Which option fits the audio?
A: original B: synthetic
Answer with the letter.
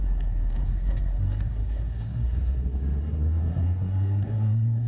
B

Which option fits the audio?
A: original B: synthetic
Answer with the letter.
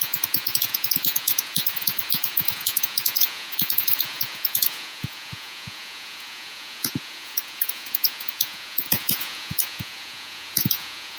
B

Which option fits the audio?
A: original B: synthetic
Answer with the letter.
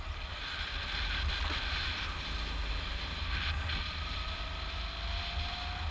A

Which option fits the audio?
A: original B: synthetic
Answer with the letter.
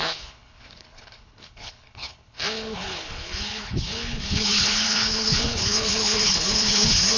B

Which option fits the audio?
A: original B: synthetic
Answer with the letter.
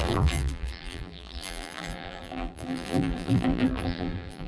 B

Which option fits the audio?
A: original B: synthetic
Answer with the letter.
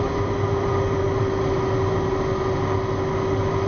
A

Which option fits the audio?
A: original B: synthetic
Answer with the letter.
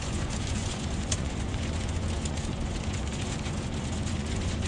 B